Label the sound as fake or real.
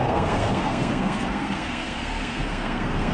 fake